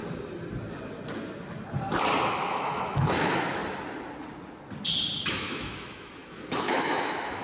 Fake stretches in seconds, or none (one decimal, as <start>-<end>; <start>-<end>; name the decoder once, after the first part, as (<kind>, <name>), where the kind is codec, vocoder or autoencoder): 2.3-3.6 (autoencoder, DAC-VAE); 5.3-7.4